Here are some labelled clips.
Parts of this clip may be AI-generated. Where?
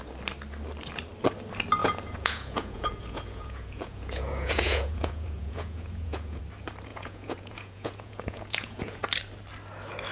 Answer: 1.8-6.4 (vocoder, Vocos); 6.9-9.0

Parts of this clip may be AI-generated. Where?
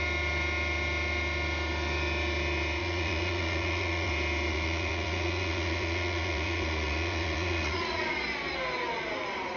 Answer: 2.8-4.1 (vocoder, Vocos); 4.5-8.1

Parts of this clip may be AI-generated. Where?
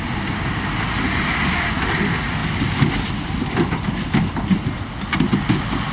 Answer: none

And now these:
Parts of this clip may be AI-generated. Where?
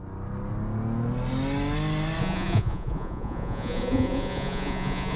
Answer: 2.2-5.2 (vocoder, Vocos)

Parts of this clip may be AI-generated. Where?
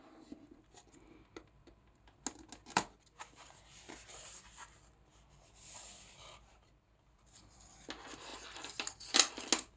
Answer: none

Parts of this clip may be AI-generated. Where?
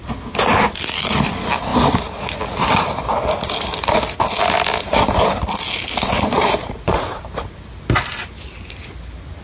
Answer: 6.6-7.2 (vocoder, Vocos)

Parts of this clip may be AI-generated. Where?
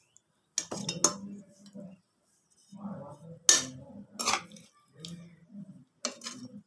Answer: none